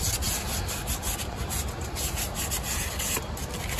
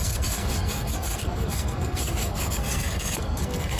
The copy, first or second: second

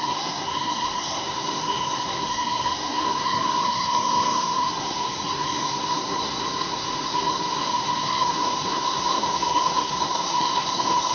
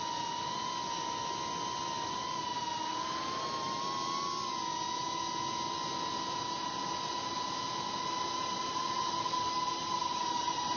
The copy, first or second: first